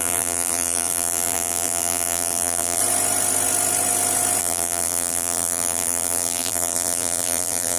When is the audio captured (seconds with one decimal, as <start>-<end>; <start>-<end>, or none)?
2.8-4.4